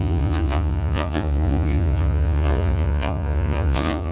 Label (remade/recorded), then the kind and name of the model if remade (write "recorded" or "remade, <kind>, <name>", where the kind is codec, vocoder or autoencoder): remade, vocoder, Vocos